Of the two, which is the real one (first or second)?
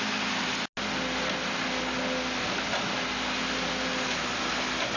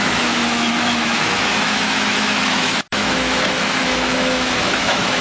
first